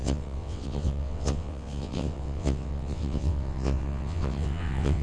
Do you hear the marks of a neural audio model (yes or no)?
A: yes